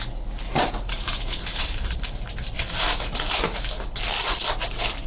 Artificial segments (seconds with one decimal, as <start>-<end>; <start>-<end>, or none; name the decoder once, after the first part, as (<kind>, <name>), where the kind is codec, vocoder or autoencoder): 0.5-3.6 (vocoder, BigVGAN v2)